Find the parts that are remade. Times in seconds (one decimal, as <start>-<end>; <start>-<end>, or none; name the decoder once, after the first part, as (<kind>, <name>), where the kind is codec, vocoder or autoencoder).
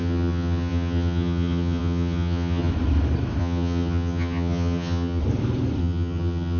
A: 0.0-2.7 (vocoder, HiFi-GAN); 3.4-5.2; 5.8-6.6